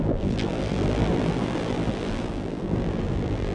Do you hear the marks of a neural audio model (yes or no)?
yes